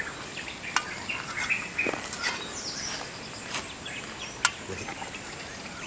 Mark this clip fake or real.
real